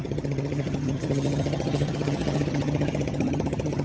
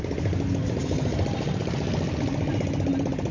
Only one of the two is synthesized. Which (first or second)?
first